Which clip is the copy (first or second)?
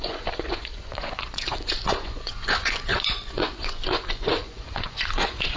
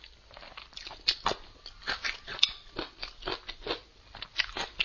first